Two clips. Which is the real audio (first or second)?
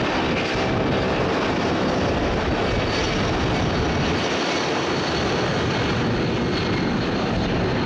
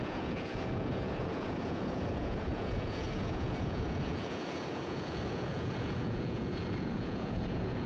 first